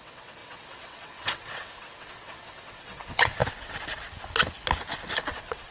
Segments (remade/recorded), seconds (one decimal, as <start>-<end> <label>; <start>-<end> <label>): 0.0-3.4 remade; 3.4-5.3 recorded; 5.3-5.7 remade